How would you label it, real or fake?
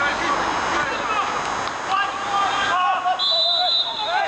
real